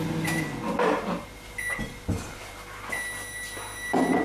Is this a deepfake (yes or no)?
no